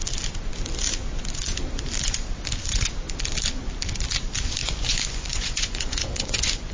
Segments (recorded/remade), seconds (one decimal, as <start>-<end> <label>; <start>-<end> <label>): 0.0-4.6 recorded; 4.6-6.7 remade